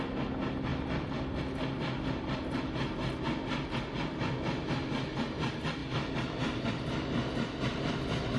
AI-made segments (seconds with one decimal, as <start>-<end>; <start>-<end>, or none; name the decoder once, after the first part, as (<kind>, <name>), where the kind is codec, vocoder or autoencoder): 0.7-1.4 (vocoder, BigVGAN v2); 5.8-8.4

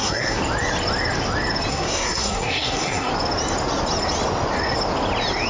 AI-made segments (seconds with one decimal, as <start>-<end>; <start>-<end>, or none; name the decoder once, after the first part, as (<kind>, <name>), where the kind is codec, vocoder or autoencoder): 0.0-0.4 (codec, SNAC); 1.7-3.1

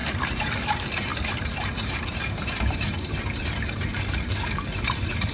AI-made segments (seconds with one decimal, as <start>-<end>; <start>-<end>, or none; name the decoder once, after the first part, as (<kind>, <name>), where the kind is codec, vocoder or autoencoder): 0.0-5.3 (vocoder, BigVGAN v2)

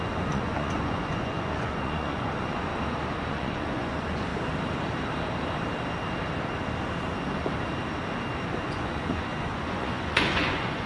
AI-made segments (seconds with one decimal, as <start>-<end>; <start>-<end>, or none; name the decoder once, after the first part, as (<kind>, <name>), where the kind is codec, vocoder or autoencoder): 0.0-2.7 (vocoder, Vocos); 3.3-4.3; 8.6-10.9

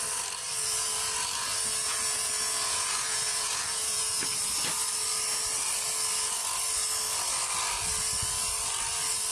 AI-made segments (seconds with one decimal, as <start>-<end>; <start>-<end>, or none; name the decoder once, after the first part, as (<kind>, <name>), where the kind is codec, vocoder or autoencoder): 1.8-4.2 (vocoder, Vocos)